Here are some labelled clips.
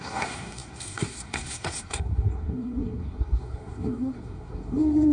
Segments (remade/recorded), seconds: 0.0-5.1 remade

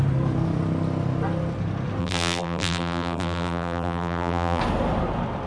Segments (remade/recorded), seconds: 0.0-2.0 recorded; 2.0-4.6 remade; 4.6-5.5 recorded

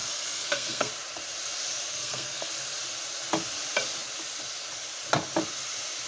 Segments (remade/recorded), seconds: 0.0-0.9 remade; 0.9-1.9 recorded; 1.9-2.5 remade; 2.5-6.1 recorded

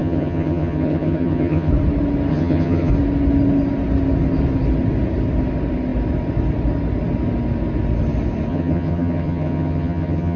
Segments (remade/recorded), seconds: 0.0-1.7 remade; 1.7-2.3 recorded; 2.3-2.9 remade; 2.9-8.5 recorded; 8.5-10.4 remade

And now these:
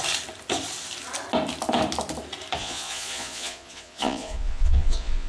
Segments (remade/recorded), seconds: 0.0-2.6 recorded; 2.6-5.3 remade